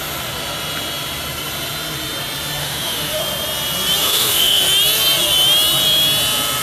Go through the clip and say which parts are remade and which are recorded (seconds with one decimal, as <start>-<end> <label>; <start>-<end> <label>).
0.0-2.6 recorded; 2.6-3.2 remade; 3.2-4.0 recorded; 4.0-4.6 remade; 4.6-6.6 recorded